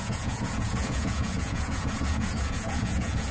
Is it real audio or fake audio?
fake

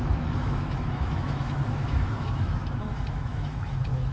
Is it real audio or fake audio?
fake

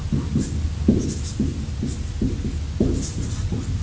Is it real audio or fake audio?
real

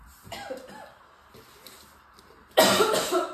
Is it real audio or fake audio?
real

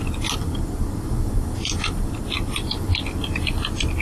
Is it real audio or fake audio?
real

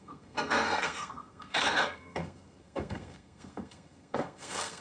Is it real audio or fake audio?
fake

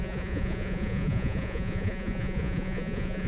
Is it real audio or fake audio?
fake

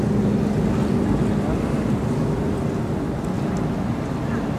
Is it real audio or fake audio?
real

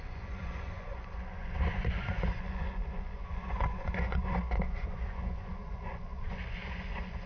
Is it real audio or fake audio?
fake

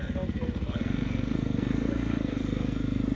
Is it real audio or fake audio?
fake